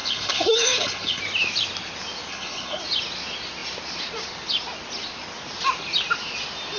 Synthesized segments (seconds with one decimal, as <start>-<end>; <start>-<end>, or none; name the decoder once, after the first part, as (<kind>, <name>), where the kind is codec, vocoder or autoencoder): 0.0-1.2 (codec, HILCodec); 2.3-2.8